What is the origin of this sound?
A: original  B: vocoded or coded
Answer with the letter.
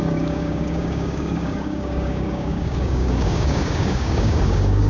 B